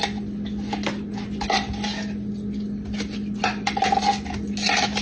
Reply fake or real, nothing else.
real